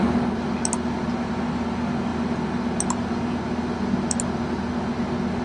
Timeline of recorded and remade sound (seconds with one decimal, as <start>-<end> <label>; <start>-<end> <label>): 0.0-5.4 recorded